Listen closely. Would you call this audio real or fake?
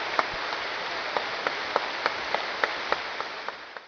real